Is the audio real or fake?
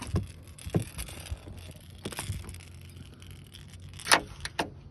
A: real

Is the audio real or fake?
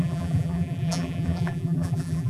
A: fake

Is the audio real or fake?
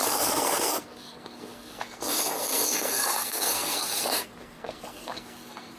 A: fake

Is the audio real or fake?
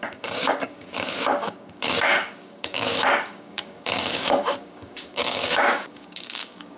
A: fake